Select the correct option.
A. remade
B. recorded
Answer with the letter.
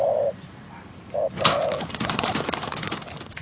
A